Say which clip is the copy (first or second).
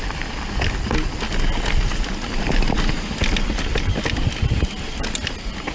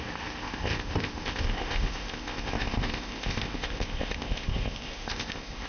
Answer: second